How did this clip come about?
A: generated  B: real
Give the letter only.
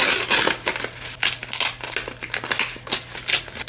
B